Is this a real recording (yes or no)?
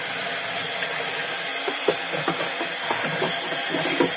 yes